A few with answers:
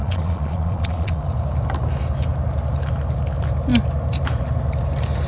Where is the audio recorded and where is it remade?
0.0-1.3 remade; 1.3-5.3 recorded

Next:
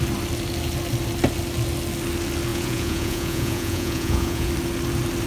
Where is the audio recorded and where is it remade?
0.0-2.5 recorded; 2.5-4.5 remade; 4.5-5.3 recorded

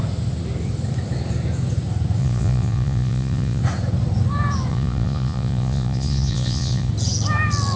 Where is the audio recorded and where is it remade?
0.0-2.2 recorded; 2.2-3.6 remade; 3.6-4.7 recorded; 4.7-6.9 remade; 6.9-7.8 recorded

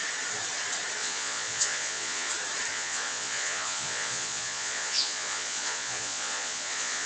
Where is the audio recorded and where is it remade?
0.0-1.0 recorded; 1.0-2.3 remade; 2.3-2.7 recorded; 2.7-7.1 remade

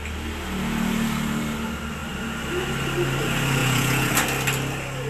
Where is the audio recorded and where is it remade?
0.0-3.6 recorded; 3.6-4.1 remade; 4.1-5.1 recorded